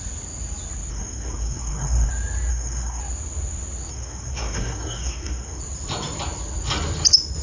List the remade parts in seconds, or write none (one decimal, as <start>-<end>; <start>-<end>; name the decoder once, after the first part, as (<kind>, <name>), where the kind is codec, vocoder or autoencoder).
0.9-2.1 (codec, SNAC); 2.5-3.0; 3.9-5.6